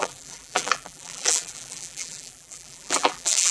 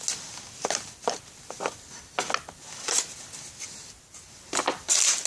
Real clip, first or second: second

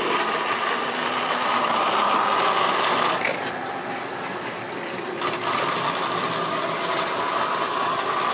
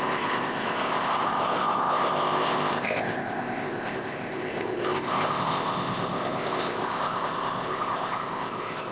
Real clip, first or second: first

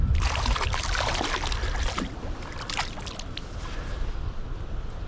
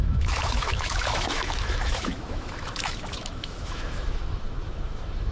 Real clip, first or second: first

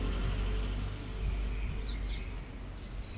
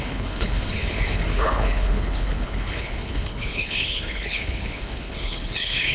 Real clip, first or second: first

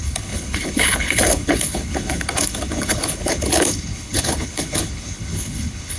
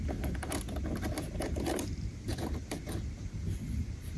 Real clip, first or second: second